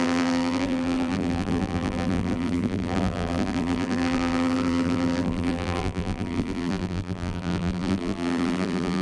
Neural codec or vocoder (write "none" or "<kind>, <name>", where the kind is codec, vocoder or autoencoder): vocoder, BigVGAN v2